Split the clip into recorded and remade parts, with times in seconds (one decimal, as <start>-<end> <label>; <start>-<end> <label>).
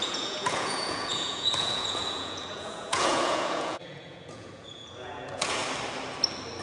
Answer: 0.0-5.6 remade; 5.6-6.6 recorded